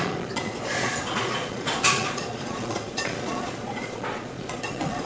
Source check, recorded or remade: remade